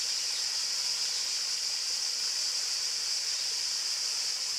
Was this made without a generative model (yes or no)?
yes